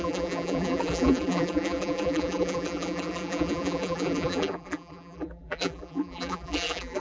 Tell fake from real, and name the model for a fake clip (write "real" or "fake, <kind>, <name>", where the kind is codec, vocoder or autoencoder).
fake, vocoder, BigVGAN v2